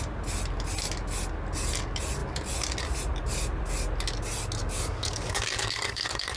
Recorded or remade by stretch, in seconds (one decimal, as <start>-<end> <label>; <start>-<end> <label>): 0.0-4.6 recorded; 4.6-6.4 remade